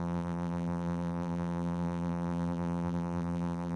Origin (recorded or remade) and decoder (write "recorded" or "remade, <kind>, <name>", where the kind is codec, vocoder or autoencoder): remade, vocoder, BigVGAN v2